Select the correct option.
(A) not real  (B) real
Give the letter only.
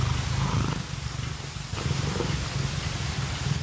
B